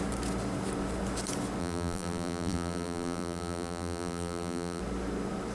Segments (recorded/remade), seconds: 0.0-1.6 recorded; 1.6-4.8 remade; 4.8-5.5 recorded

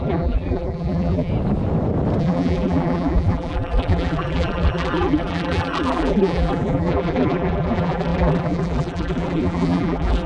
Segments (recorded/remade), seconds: 0.0-1.3 remade; 1.3-2.2 recorded; 2.2-10.3 remade